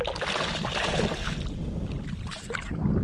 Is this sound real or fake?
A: real